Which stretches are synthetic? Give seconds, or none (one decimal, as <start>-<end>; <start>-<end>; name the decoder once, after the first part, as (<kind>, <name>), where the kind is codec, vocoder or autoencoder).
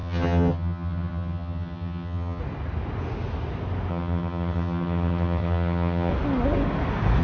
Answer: 0.0-2.4 (vocoder, HiFi-GAN); 3.9-6.1